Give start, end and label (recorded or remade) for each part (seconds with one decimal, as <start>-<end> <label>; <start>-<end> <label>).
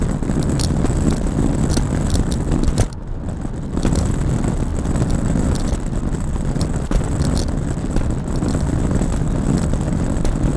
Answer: 0.0-10.6 recorded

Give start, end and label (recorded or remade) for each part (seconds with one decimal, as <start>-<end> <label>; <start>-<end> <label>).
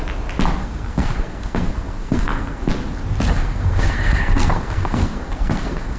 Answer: 0.0-0.6 recorded; 0.6-2.7 remade; 2.7-3.3 recorded; 3.3-6.0 remade